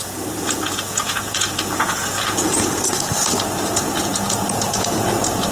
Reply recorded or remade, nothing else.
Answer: remade